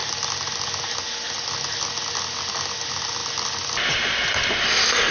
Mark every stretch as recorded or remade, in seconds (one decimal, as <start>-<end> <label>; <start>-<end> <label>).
0.0-5.1 recorded